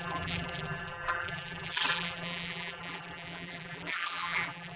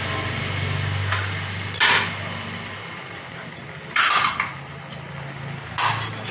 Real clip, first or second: second